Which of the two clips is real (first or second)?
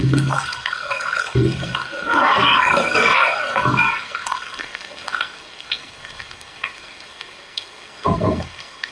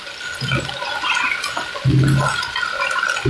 second